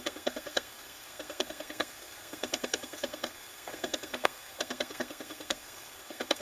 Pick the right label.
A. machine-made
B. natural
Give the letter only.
A